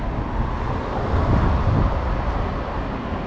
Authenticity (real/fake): real